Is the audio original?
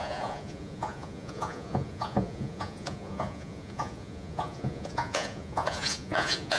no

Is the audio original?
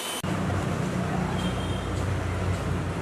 yes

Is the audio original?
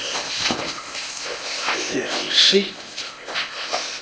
no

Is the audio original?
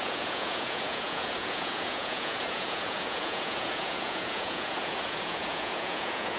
no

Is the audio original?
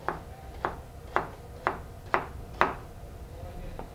yes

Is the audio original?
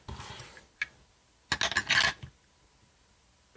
yes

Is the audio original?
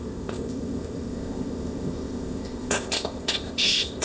no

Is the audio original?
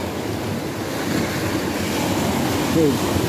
yes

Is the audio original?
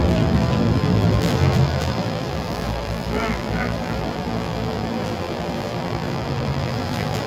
no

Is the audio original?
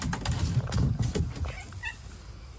yes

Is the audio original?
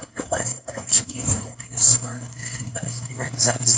no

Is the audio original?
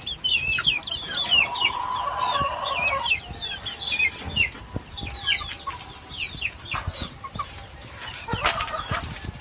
yes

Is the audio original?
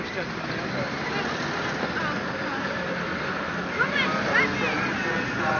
yes